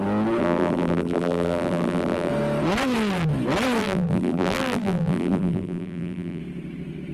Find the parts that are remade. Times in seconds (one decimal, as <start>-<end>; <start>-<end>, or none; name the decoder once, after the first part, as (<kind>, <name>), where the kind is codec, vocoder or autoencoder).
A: 0.4-2.3 (vocoder, BigVGAN v2); 3.8-6.4